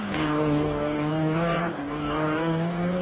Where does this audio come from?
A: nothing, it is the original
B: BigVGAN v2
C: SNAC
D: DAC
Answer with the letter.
D